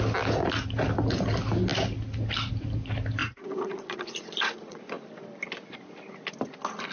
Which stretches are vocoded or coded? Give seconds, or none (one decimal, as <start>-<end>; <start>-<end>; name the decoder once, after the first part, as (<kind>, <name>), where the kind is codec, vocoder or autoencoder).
3.2-4.8 (vocoder, Vocos)